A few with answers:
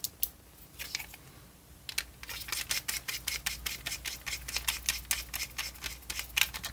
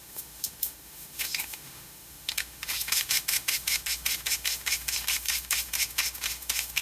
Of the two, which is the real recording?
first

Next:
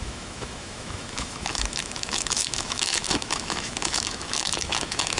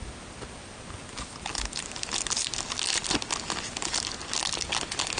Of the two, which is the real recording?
second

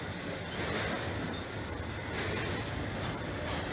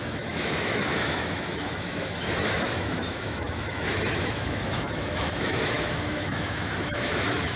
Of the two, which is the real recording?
first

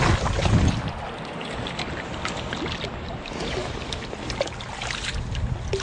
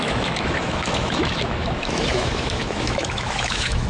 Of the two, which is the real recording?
first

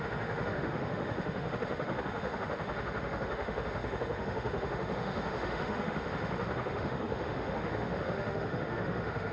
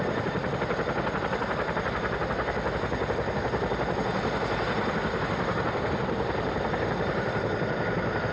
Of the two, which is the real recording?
second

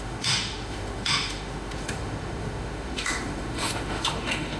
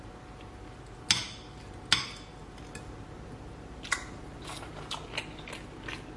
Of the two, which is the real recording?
second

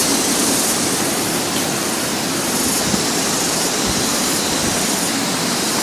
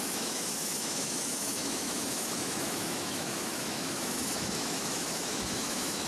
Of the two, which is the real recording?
first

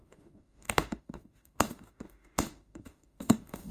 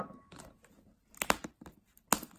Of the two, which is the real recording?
second